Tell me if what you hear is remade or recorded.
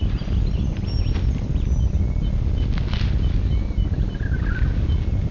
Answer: recorded